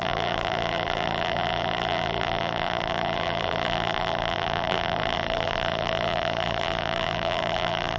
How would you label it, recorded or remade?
remade